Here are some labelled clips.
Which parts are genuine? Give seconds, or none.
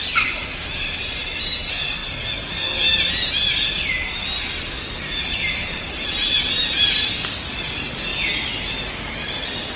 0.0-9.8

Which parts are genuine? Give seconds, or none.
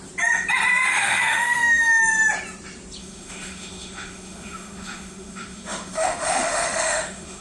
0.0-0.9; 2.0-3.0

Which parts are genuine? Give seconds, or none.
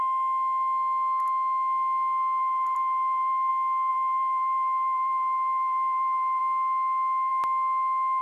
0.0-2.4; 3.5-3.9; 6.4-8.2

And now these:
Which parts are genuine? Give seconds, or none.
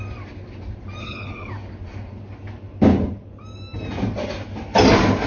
0.0-1.0; 1.5-5.3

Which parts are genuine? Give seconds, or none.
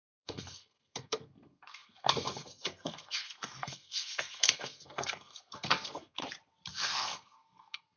6.2-6.7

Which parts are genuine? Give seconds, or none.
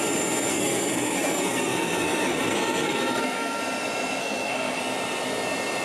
0.0-0.5; 3.6-4.2; 4.8-5.8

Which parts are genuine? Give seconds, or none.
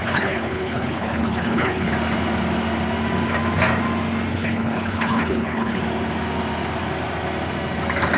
1.9-4.3; 5.8-8.2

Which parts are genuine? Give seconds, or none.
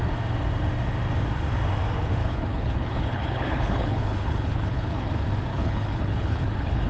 0.0-2.2; 5.1-5.5